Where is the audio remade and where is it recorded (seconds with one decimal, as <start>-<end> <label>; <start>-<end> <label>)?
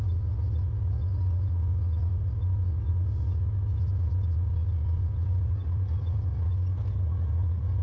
0.0-2.1 recorded; 2.1-2.9 remade; 2.9-3.7 recorded; 3.7-6.5 remade; 6.5-7.8 recorded